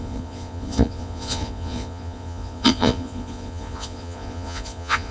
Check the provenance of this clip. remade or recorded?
remade